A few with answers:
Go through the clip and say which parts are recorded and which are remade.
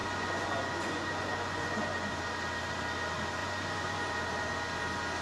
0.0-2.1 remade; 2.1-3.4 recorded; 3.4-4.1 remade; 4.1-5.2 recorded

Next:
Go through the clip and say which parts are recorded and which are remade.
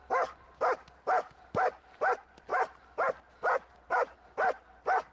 0.0-2.5 recorded; 2.5-3.2 remade; 3.2-5.1 recorded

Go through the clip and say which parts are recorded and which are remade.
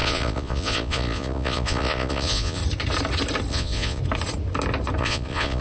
0.0-2.6 remade; 2.6-3.5 recorded; 3.5-4.0 remade; 4.0-5.0 recorded; 5.0-5.6 remade